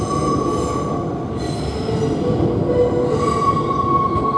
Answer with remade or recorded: recorded